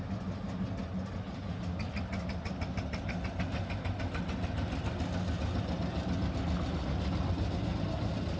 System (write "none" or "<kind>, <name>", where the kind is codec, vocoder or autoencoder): none